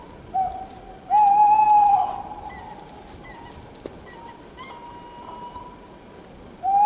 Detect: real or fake real